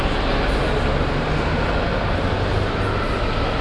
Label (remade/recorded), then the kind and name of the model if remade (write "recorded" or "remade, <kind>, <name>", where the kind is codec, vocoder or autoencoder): recorded